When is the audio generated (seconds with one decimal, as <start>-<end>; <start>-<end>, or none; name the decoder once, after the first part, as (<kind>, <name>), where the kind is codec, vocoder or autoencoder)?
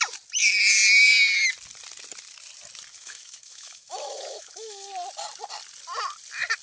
2.9-4.9 (autoencoder, DAC-VAE)